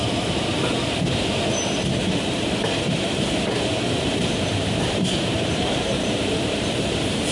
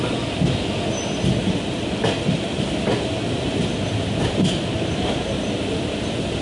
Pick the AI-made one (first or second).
first